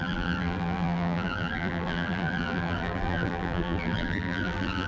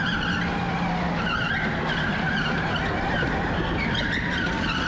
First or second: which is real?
second